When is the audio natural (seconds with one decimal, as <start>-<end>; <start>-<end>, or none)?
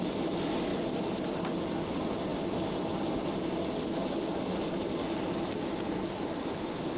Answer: 0.0-7.0